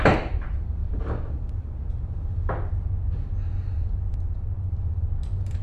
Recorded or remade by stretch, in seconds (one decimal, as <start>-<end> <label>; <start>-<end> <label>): 0.0-5.6 recorded